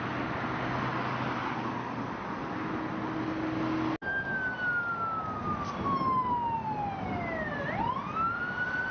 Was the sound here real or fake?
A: real